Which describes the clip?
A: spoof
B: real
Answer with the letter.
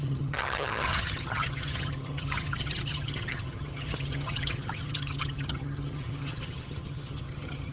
A